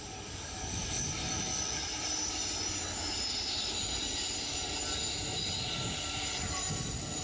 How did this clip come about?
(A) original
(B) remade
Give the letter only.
A